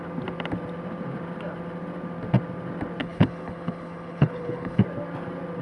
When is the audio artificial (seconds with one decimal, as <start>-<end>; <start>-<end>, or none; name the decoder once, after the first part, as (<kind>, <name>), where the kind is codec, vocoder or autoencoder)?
3.0-4.8 (codec, HILCodec)